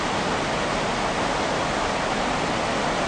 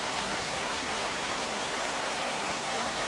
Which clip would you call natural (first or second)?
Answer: first